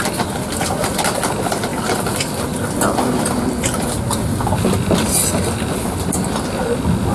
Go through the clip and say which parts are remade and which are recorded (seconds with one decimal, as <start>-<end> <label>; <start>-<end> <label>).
0.0-7.1 recorded